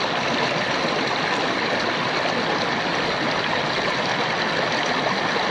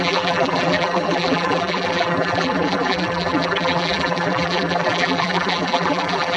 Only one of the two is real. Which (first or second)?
first